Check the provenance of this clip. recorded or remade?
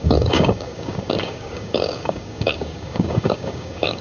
remade